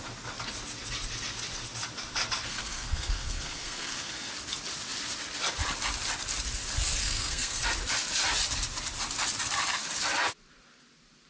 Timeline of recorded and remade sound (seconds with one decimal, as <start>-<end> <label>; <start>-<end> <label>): 0.0-2.5 recorded; 2.5-4.3 remade; 4.3-7.0 recorded; 7.0-7.6 remade; 7.6-11.3 recorded